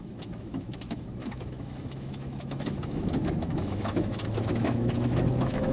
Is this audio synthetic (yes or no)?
yes